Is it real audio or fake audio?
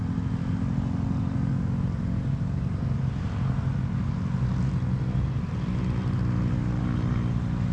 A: real